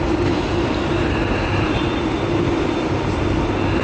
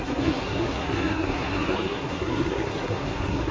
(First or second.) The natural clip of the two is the first